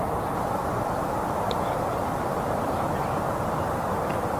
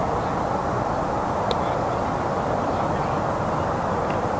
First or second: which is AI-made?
first